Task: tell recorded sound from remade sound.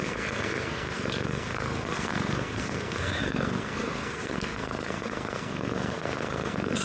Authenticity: remade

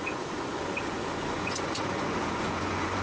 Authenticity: remade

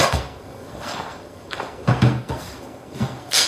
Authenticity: remade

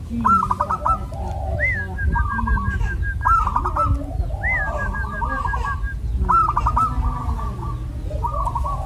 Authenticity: recorded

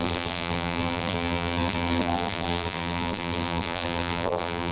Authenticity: remade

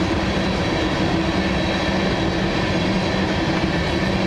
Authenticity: recorded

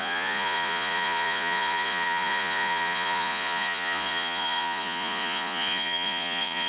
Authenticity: remade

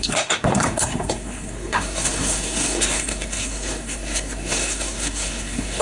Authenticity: remade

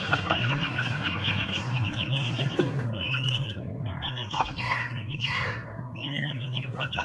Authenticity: remade